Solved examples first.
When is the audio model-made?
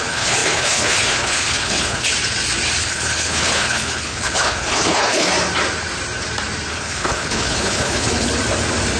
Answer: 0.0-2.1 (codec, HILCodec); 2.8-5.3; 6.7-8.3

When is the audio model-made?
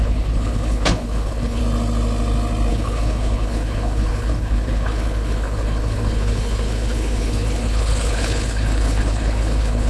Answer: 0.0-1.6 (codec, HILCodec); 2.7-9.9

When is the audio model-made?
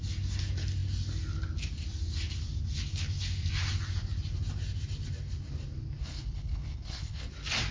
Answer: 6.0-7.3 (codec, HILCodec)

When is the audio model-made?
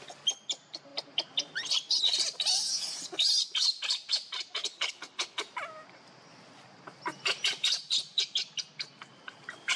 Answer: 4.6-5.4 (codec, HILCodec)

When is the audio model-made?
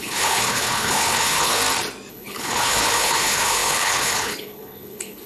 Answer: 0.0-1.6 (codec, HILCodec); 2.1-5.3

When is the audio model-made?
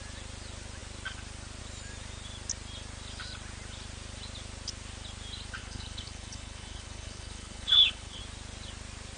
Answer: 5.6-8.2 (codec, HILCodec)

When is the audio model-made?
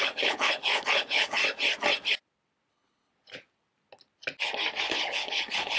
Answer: 0.0-1.4 (codec, HILCodec); 2.7-3.1; 4.9-5.8